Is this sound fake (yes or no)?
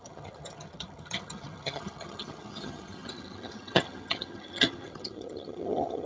yes